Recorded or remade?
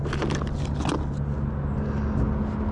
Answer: recorded